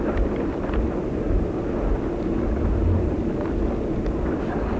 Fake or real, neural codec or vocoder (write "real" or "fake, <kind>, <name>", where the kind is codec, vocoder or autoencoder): real